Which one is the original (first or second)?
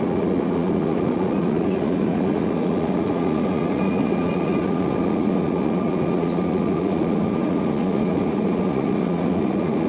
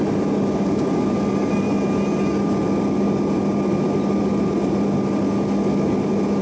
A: second